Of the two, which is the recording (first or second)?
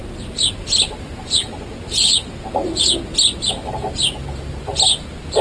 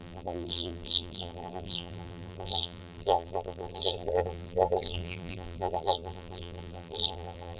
first